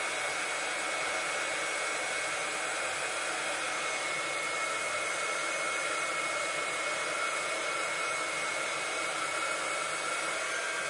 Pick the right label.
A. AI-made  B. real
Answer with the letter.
B